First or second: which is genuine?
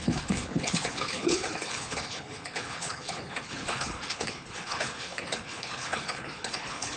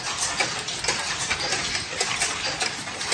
second